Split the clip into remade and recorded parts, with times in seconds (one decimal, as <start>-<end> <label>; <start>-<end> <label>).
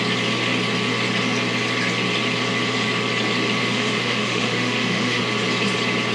0.0-3.6 recorded; 3.6-5.2 remade; 5.2-6.1 recorded